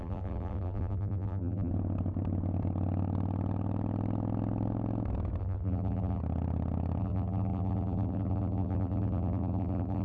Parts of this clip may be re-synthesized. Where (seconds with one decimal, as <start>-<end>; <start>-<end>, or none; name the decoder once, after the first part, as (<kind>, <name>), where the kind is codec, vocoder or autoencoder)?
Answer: 0.0-1.7 (vocoder, BigVGAN v2); 5.4-6.2; 7.0-10.0